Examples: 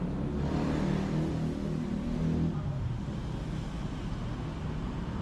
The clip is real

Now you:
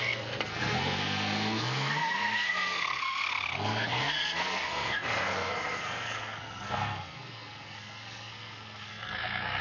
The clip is fake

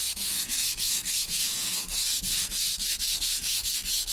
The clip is fake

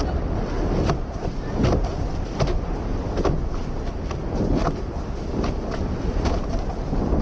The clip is real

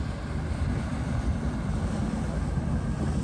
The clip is real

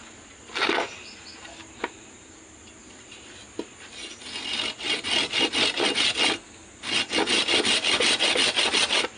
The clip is real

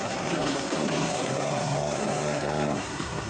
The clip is fake